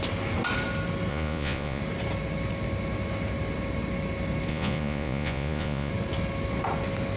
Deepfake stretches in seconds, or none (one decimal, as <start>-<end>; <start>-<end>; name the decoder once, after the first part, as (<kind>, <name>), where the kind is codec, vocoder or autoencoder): 1.1-1.8 (vocoder, Vocos); 4.5-5.9